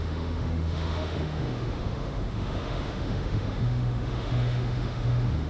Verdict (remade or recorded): remade